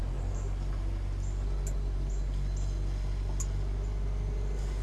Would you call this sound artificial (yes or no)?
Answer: no